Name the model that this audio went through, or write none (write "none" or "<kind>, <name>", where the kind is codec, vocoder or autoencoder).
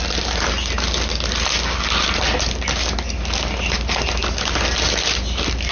none